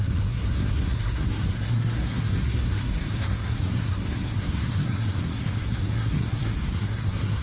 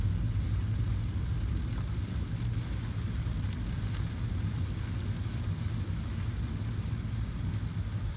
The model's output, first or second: first